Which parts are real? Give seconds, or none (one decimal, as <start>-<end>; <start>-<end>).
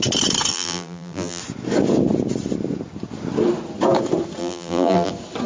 0.0-0.5; 1.4-4.4; 5.1-5.5